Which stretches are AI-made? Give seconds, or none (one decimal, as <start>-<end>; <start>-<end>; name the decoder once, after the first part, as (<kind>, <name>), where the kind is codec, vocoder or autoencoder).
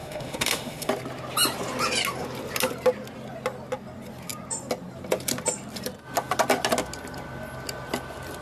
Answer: 0.0-0.9 (autoencoder, DAC-VAE)